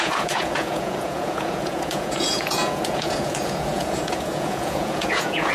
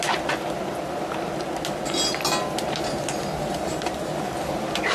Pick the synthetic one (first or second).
first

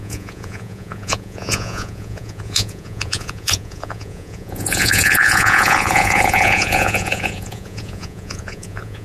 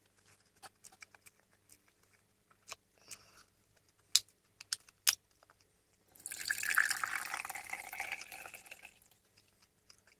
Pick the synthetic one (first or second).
first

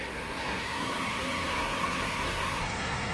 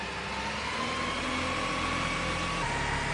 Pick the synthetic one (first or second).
first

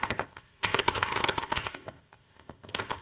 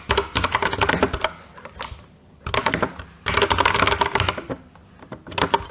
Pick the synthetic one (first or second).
first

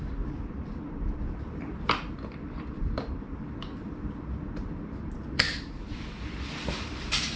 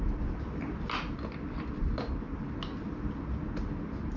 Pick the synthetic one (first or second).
first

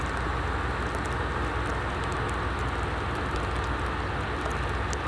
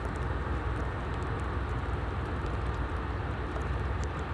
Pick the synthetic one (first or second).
second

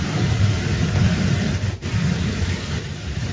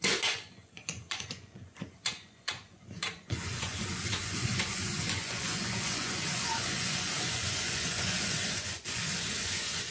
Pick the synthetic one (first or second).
second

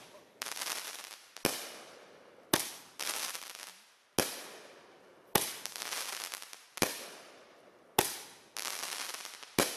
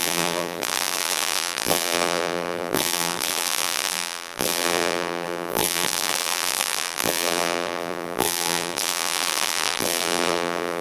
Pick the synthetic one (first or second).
second